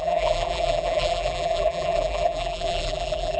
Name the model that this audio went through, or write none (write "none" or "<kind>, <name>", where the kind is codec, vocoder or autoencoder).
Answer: vocoder, BigVGAN v2